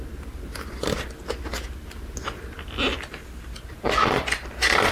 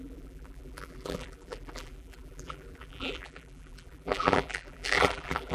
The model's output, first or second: second